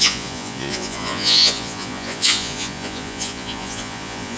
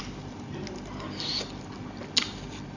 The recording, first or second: second